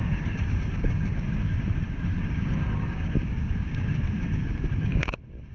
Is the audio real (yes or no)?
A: no